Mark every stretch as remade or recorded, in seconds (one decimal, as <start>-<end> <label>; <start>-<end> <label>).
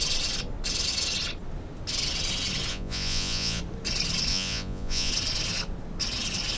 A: 0.0-2.7 recorded; 2.7-3.6 remade; 3.6-4.3 recorded; 4.3-5.1 remade; 5.1-6.6 recorded